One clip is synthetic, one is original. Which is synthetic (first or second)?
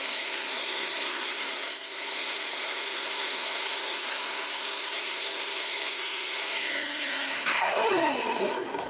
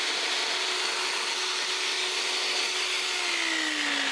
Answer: first